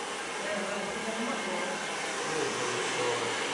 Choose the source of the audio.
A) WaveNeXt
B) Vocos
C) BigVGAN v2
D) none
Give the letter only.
D